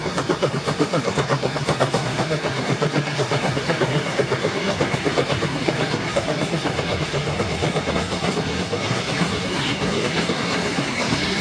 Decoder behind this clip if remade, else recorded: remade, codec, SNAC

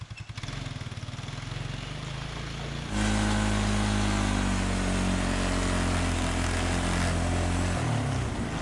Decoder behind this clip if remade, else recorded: recorded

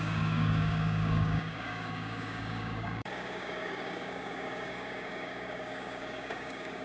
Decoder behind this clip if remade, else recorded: remade, codec, DAC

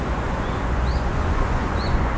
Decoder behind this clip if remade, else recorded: remade, vocoder, Vocos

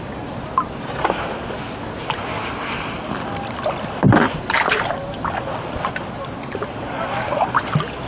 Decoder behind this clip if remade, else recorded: recorded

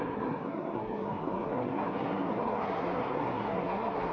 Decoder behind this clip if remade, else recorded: remade, codec, SNAC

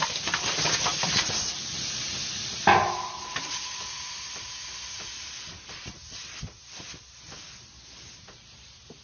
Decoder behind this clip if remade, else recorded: recorded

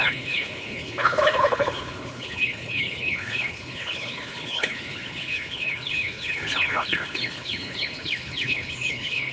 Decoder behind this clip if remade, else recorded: remade, codec, HILCodec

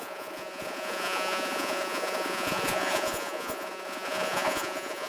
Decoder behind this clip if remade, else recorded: remade, vocoder, Vocos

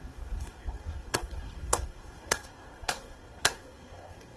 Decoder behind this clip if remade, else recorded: remade, codec, SNAC